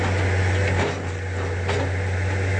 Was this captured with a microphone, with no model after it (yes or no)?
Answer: yes